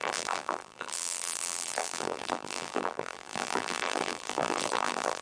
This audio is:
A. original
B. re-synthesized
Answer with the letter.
B